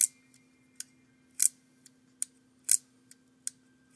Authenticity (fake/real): real